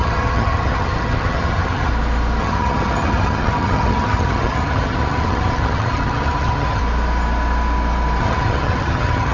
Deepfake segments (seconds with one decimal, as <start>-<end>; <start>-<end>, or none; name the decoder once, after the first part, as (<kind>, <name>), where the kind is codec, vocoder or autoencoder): 0.0-1.9 (vocoder, HiFi-GAN); 2.4-6.8; 8.2-9.3